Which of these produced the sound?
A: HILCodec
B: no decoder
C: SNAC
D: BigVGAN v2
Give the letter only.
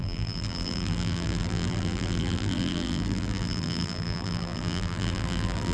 D